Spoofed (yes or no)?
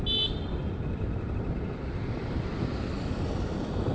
no